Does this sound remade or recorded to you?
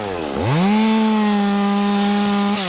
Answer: recorded